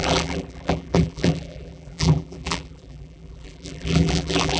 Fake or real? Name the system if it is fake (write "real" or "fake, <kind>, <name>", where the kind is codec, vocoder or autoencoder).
fake, vocoder, BigVGAN v2